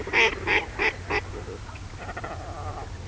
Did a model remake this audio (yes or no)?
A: no